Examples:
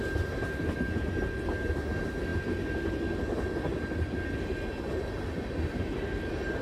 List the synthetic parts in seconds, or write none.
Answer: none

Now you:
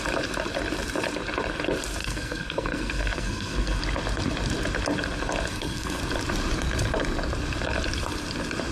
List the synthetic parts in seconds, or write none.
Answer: 2.0-3.8 (codec, SNAC); 5.5-6.0

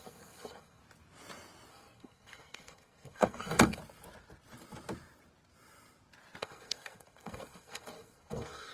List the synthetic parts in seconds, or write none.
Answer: 0.0-0.8 (codec, SNAC); 1.7-3.8; 6.4-8.7

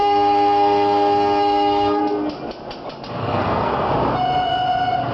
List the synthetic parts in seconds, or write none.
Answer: 0.0-2.0 (codec, SNAC); 3.2-3.9

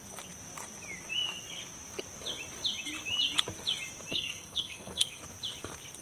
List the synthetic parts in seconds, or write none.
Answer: 4.1-5.2 (codec, SNAC)

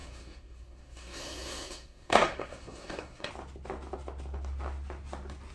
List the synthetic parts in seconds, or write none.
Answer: 0.0-3.3 (codec, SNAC)

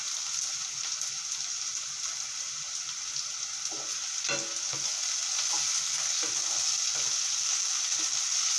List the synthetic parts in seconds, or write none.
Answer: none